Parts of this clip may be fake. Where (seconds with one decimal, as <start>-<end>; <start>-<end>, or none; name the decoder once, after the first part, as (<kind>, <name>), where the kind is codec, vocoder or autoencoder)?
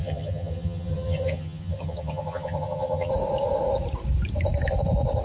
0.0-3.1 (vocoder, HiFi-GAN)